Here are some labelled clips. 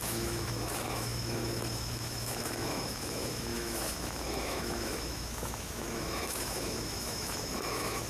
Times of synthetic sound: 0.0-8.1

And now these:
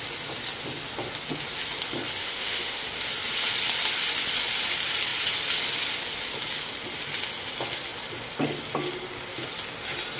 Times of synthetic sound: 2.2-2.9

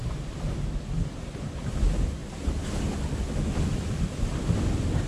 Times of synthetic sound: none

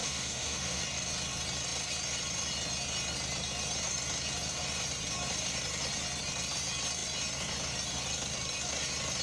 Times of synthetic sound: 0.0-0.8

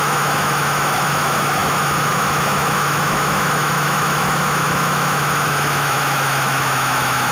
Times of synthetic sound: 0.0-7.3

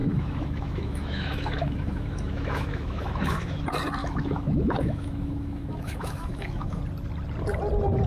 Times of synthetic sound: 0.0-3.6; 4.0-6.8

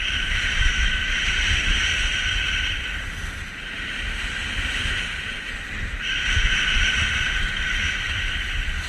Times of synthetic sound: 0.6-1.1

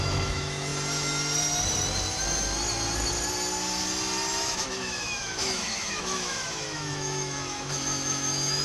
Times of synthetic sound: 0.0-0.7; 4.4-8.6